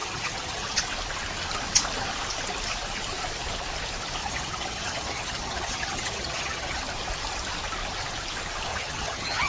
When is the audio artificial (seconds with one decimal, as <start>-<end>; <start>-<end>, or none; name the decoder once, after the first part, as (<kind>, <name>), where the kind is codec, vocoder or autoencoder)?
0.0-0.8 (vocoder, HiFi-GAN); 4.2-6.8; 8.7-9.5